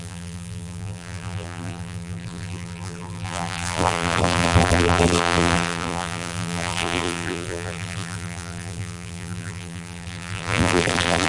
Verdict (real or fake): fake